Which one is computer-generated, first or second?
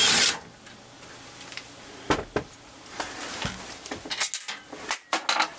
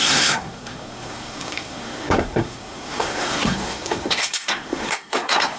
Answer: second